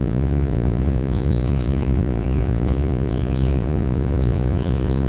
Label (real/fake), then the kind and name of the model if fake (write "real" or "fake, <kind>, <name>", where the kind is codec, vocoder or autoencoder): fake, vocoder, Vocos